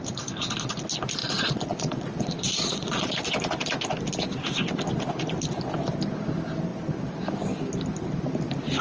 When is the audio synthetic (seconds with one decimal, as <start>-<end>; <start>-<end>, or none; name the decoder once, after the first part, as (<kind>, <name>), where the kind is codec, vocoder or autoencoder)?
1.2-3.1 (vocoder, Vocos)